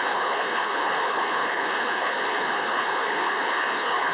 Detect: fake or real fake